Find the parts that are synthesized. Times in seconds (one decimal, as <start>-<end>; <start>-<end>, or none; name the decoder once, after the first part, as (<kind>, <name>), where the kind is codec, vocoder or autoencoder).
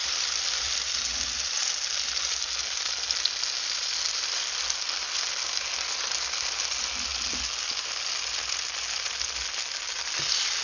0.0-1.6 (vocoder, BigVGAN v2)